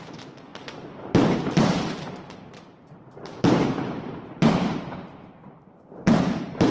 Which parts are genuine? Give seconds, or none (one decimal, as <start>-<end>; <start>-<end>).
0.5-1.4